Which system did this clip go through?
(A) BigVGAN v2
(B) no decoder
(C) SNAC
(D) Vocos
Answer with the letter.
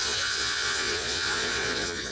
D